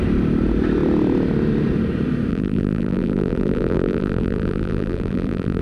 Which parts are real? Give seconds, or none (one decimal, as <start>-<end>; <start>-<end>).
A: 0.0-2.3